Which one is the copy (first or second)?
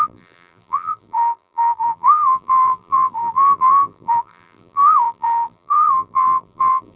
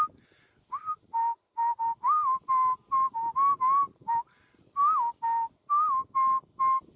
first